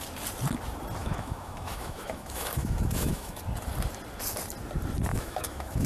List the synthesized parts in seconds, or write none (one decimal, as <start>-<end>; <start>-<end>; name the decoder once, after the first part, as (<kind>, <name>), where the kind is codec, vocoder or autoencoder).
1.0-3.4 (autoencoder, DAC-VAE); 5.1-5.9